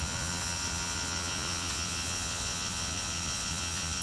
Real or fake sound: fake